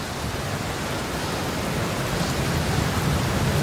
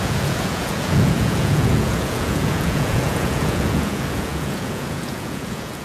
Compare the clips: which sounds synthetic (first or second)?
second